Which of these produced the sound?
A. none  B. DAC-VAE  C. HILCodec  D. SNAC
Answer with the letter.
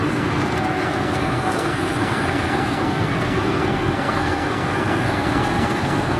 D